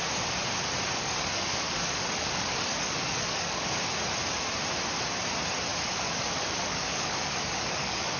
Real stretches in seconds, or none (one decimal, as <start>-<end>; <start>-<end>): 0.0-1.0; 3.8-5.7